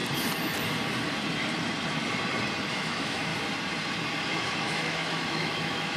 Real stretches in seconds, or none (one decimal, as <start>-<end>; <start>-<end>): 0.0-2.7; 3.3-4.2